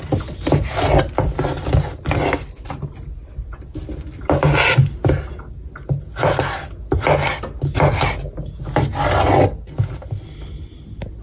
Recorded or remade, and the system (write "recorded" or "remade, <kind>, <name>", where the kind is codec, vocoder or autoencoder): recorded